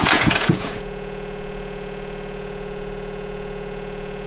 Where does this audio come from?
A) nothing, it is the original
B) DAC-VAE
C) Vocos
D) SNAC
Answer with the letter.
C